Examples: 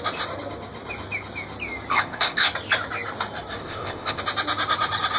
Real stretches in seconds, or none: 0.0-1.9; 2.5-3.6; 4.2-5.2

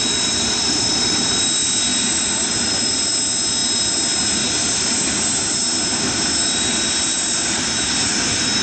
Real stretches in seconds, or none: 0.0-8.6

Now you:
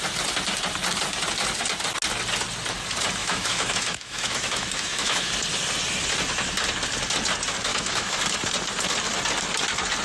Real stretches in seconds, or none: 0.0-3.2; 5.3-7.7; 8.2-10.0

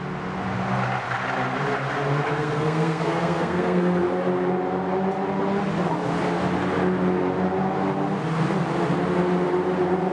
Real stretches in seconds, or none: 0.0-2.3; 4.0-10.1

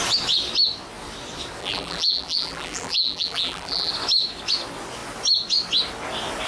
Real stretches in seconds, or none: 0.0-1.6; 3.9-6.5

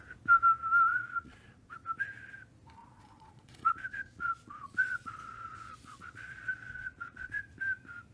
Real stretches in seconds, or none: 0.0-0.9; 1.7-2.8; 7.4-8.1

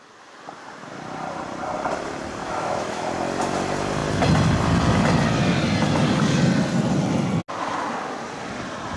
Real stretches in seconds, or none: 0.0-2.4; 3.1-9.0

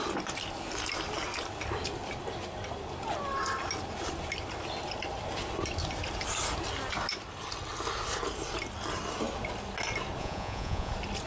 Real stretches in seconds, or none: 0.0-10.2; 10.9-11.3